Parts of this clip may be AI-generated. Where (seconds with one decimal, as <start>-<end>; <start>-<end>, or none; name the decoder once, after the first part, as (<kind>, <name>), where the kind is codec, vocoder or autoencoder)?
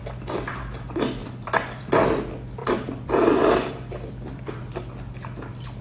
1.2-1.9 (vocoder, BigVGAN v2); 2.6-4.6